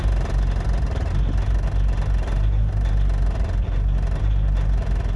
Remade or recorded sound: recorded